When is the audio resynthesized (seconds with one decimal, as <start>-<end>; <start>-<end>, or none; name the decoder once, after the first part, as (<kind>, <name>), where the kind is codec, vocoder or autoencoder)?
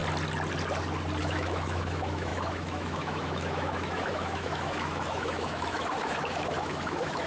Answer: 1.2-7.3 (autoencoder, DAC-VAE)